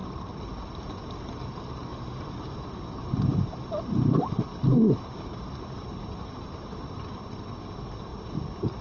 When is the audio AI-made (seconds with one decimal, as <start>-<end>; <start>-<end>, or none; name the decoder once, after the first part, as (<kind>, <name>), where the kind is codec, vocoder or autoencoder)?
1.9-3.4 (vocoder, BigVGAN v2)